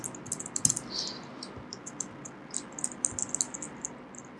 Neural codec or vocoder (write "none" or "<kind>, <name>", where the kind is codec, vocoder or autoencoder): none